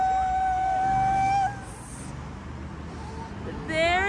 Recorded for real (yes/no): yes